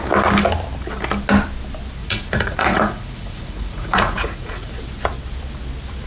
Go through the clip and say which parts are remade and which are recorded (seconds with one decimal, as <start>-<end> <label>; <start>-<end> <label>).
0.0-2.0 recorded; 2.0-4.7 remade; 4.7-6.1 recorded